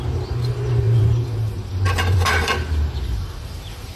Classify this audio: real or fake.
fake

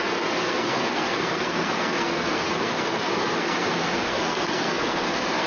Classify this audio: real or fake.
fake